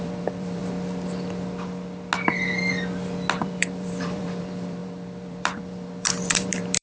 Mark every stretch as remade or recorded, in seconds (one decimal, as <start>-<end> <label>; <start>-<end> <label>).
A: 0.0-0.6 remade; 0.6-3.4 recorded; 3.4-6.8 remade